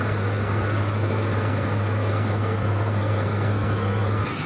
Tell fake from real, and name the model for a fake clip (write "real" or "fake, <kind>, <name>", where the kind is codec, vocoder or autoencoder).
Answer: fake, codec, SNAC